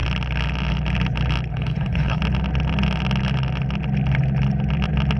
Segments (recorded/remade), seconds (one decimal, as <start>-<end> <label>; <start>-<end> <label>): 0.0-1.5 recorded; 1.5-2.2 remade; 2.2-5.2 recorded